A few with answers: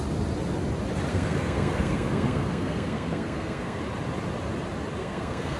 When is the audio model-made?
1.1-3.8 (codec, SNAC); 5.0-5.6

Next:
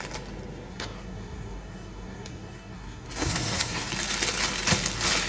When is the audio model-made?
0.7-3.9 (codec, SNAC)

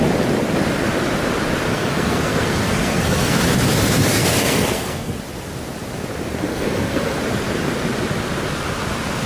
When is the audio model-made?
1.7-3.4 (codec, SNAC); 4.1-5.1; 6.5-7.2

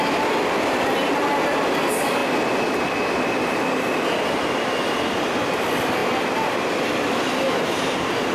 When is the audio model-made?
none

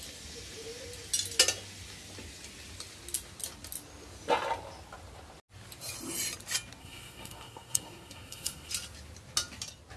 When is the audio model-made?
6.8-8.7 (codec, SNAC)

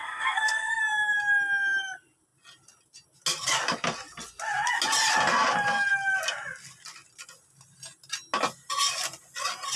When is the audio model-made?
0.0-0.8 (codec, SNAC)

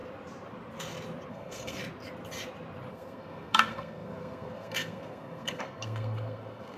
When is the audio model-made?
1.3-1.8 (codec, SNAC); 2.9-6.8